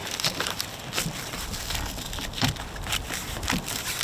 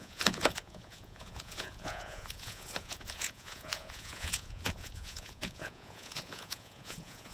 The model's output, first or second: second